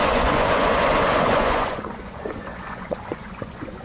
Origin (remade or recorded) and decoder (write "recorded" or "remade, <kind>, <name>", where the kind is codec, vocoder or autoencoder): remade, vocoder, Vocos